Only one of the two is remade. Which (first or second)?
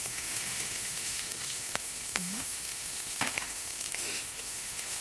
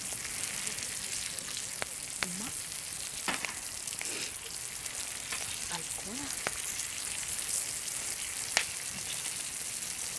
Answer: first